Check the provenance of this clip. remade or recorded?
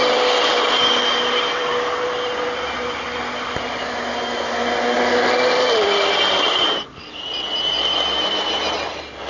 recorded